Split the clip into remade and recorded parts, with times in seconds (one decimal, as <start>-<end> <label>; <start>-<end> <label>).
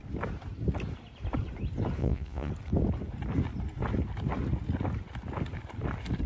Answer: 0.0-2.0 recorded; 2.0-2.5 remade; 2.5-6.3 recorded